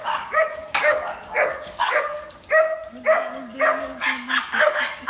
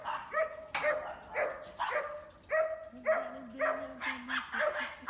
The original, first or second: second